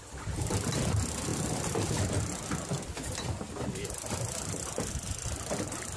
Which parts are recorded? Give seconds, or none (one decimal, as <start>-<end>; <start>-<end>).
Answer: 0.0-6.0